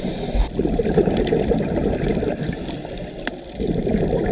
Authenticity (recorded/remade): remade